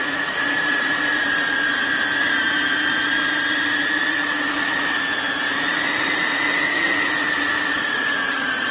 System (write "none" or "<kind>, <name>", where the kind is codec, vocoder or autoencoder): vocoder, Vocos